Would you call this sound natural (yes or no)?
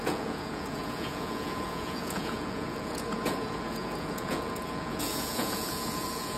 no